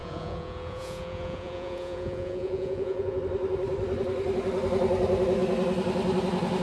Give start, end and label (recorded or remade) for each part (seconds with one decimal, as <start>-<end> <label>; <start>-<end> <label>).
0.0-3.2 remade; 3.2-6.6 recorded